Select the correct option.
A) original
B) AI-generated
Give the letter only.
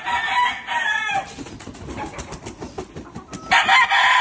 A